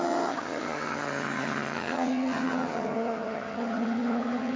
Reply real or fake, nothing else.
fake